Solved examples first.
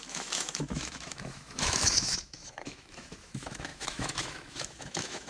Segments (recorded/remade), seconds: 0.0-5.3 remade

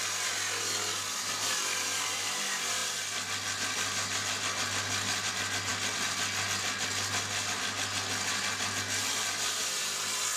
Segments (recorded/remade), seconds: 0.0-10.4 recorded

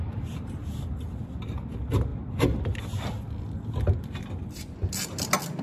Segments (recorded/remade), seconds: 0.0-5.6 recorded

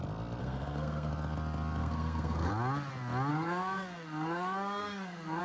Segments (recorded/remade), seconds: 0.0-0.4 recorded; 0.4-1.1 remade; 1.1-1.8 recorded; 1.8-2.5 remade; 2.5-3.3 recorded; 3.3-5.4 remade